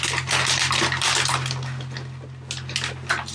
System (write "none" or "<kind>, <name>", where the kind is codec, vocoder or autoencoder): none